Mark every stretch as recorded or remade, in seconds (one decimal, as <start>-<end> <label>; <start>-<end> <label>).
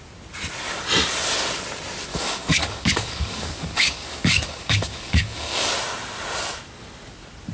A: 0.0-2.1 recorded; 2.1-5.7 remade; 5.7-7.5 recorded